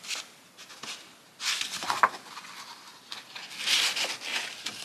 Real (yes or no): yes